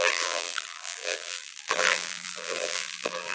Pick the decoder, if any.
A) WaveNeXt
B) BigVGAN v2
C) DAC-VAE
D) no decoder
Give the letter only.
B